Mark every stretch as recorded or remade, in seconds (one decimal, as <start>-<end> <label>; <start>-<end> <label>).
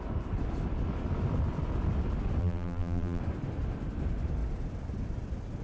0.0-2.4 recorded; 2.4-3.2 remade; 3.2-5.6 recorded